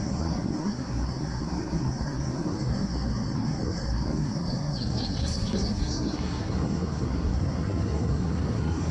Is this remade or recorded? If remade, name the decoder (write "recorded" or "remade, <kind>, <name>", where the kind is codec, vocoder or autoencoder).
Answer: remade, codec, SNAC